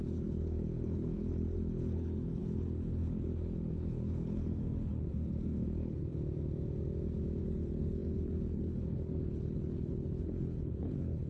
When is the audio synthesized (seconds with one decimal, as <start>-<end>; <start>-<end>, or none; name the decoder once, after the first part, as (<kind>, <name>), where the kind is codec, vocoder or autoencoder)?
0.0-6.1 (codec, HILCodec); 7.4-11.3